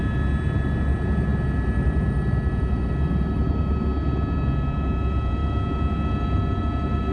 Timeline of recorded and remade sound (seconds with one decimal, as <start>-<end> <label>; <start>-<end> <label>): 0.0-7.1 recorded